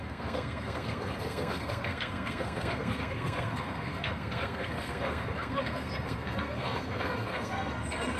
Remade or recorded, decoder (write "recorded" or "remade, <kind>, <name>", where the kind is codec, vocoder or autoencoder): remade, codec, SNAC